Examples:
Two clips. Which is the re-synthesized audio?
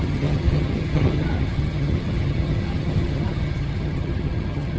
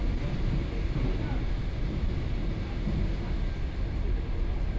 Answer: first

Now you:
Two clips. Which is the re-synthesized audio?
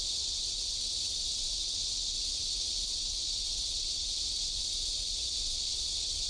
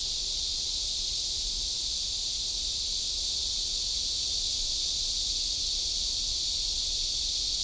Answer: first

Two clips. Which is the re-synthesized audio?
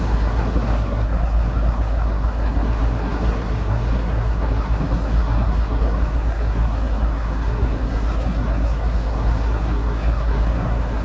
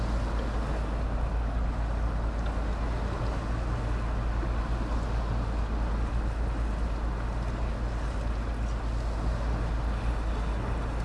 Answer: first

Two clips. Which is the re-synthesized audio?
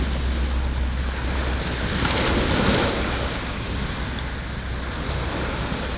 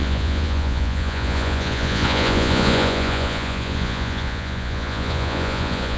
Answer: second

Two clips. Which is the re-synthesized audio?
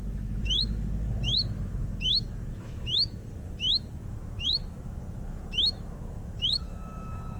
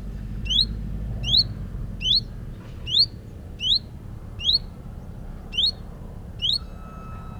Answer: first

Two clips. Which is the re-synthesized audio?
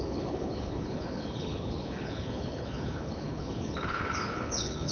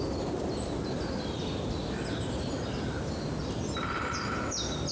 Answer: first